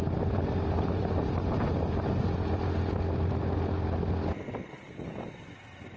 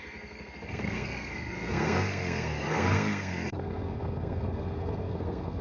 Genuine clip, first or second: first